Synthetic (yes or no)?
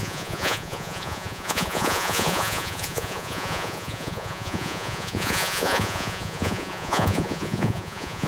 yes